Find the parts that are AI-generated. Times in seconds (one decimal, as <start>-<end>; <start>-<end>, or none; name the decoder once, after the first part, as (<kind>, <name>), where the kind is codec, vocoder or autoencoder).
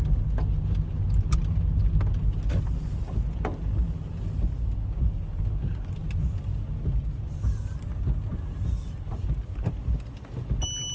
none